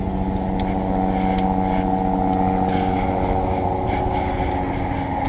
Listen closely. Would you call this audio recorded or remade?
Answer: recorded